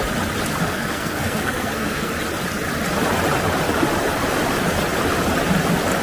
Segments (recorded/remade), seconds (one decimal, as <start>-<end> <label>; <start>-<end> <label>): 0.0-0.6 recorded; 0.6-2.1 remade; 2.1-6.0 recorded